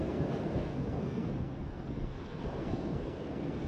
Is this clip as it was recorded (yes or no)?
no